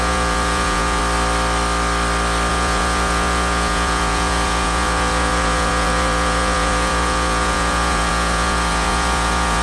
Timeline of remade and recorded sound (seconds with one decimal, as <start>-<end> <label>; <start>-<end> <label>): 0.0-1.0 remade; 1.0-2.5 recorded; 2.5-9.6 remade